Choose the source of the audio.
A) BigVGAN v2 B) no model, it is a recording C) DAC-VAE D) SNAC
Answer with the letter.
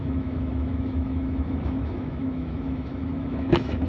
C